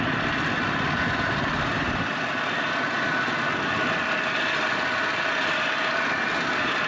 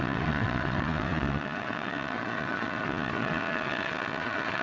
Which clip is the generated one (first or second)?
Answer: second